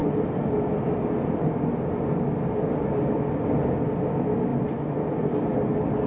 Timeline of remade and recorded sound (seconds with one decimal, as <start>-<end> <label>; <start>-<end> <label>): 0.0-6.1 recorded